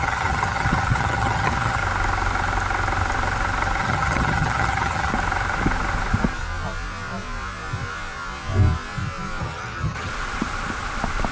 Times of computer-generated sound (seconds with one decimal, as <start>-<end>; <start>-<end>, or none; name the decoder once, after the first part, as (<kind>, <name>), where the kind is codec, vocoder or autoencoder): 0.0-1.8 (vocoder, HiFi-GAN); 3.8-5.1; 9.4-10.1